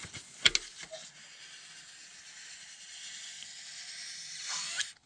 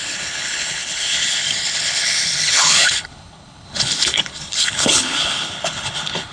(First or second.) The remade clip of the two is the second